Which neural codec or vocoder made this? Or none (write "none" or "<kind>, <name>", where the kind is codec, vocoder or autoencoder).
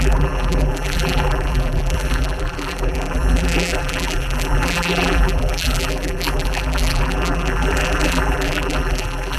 vocoder, BigVGAN v2